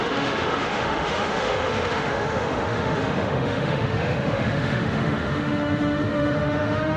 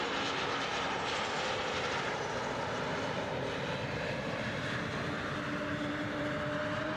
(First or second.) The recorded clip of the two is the second